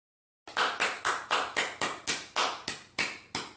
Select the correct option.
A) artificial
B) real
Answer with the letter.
B